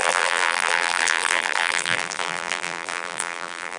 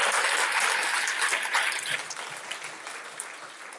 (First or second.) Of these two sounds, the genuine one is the second